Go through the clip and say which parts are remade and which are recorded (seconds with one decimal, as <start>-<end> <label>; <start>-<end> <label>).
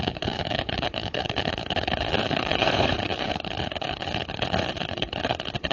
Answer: 0.0-5.7 remade